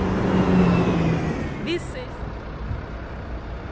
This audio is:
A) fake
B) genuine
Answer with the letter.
B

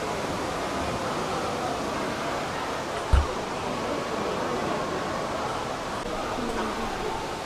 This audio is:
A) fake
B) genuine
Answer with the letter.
B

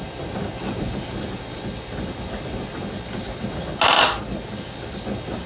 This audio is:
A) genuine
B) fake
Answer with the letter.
A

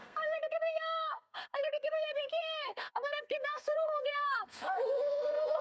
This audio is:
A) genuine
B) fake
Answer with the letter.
B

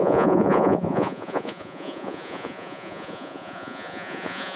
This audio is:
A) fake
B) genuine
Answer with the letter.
A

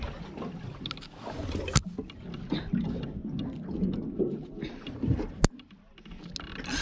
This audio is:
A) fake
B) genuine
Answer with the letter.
B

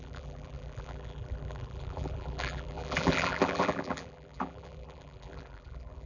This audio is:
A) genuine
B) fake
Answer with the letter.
B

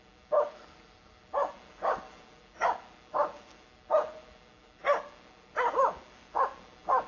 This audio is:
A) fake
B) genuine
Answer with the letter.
B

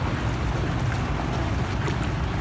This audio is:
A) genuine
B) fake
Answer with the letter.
A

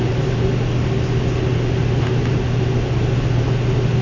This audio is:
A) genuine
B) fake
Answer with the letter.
A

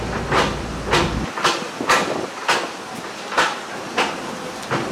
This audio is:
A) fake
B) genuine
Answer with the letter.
B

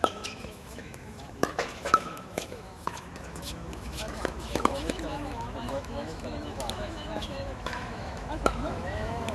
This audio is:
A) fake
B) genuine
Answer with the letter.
A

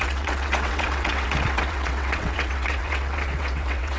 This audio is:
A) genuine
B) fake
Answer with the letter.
B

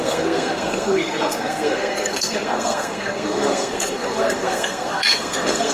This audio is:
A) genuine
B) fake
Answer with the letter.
B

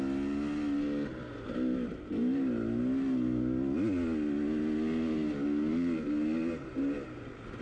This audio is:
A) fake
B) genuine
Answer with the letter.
B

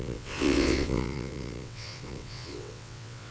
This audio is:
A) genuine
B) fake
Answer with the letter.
B